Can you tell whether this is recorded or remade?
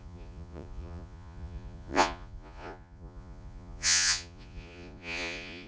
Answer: remade